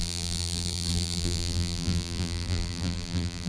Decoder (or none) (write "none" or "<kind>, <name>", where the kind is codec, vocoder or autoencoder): vocoder, BigVGAN v2